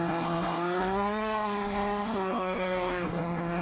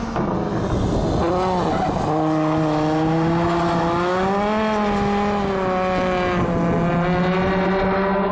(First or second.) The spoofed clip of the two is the first